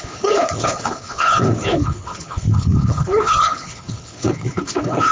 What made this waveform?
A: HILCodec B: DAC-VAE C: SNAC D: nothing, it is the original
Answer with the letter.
A